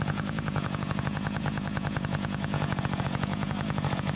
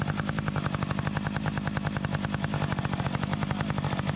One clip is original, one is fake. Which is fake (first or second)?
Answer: first